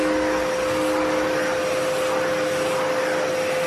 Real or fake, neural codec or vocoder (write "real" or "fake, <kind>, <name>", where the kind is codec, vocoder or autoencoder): real